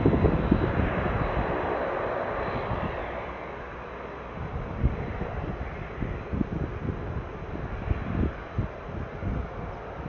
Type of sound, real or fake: real